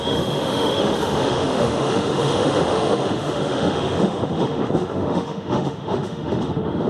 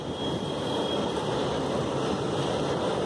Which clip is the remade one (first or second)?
first